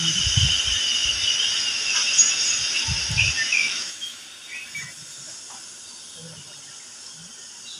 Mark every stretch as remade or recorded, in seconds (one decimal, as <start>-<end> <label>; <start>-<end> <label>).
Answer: 0.0-3.5 recorded; 3.5-4.2 remade; 4.2-7.8 recorded